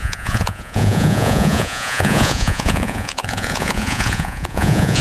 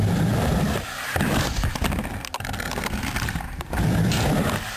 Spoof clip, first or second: first